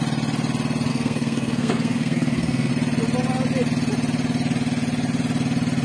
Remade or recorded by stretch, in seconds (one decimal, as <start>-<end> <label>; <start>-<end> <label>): 0.0-0.9 recorded; 0.9-2.7 remade; 2.7-5.8 recorded